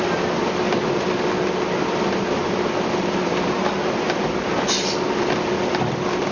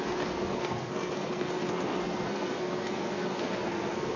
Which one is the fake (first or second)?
second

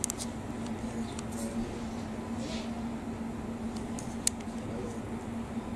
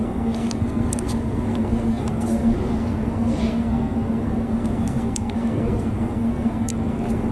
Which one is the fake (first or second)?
second